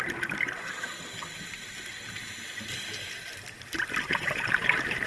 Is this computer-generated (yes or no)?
no